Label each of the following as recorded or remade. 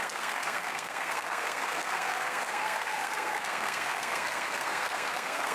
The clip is remade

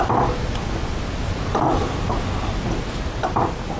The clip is recorded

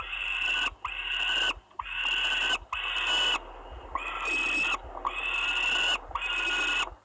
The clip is recorded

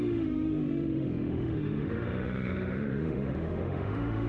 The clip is remade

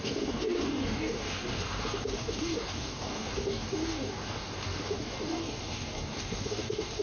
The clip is remade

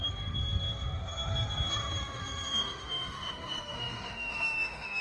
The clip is remade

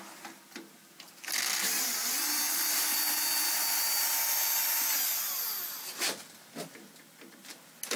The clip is recorded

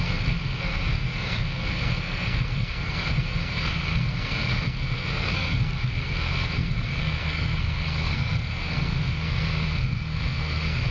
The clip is remade